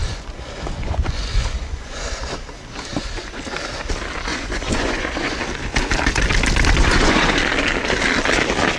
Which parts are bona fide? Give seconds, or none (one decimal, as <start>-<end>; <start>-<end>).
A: 2.1-2.9; 3.4-4.3; 5.4-6.8; 7.4-8.8